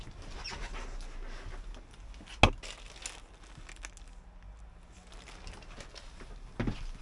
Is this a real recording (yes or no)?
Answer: yes